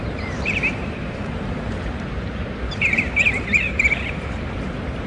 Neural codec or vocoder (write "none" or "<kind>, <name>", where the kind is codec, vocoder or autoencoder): vocoder, BigVGAN v2